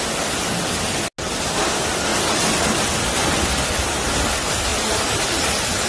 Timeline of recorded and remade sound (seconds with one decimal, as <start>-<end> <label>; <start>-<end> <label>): 0.0-5.9 recorded